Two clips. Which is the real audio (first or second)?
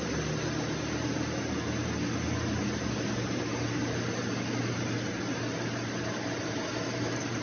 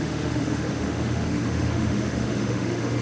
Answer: first